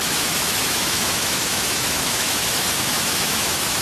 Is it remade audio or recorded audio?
remade